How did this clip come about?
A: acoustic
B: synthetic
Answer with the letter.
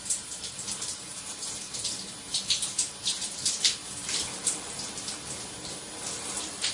B